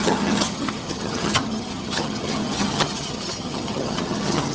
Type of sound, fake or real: fake